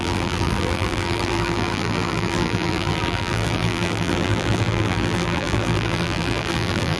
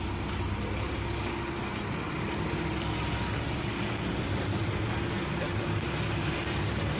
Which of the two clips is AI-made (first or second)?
first